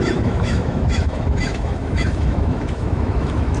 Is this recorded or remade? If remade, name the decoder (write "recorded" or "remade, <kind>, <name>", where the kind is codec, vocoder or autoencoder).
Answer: remade, autoencoder, DAC-VAE